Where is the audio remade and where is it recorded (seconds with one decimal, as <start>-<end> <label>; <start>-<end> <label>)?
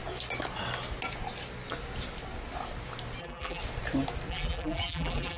0.0-3.2 recorded; 3.2-3.6 remade; 3.6-4.3 recorded; 4.3-5.4 remade